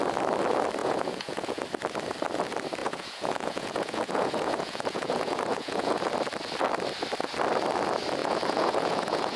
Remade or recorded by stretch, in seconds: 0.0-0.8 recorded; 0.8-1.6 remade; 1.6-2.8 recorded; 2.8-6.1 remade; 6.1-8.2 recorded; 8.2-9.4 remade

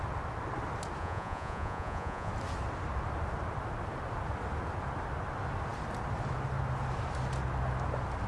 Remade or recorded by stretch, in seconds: 0.0-1.0 recorded; 1.0-2.3 remade; 2.3-8.3 recorded

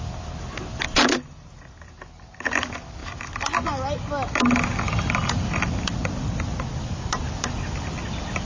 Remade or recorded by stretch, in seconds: 0.0-8.5 recorded

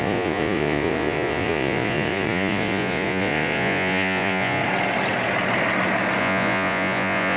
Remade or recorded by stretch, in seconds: 0.0-4.6 remade; 4.6-6.2 recorded; 6.2-7.4 remade

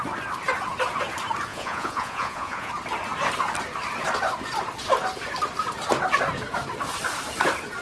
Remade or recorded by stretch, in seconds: 0.0-1.5 recorded; 1.5-2.7 remade; 2.7-7.8 recorded

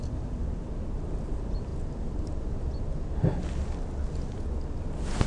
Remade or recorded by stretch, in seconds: 0.0-5.3 recorded

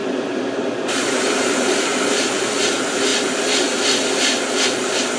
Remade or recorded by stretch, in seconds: 0.0-5.2 recorded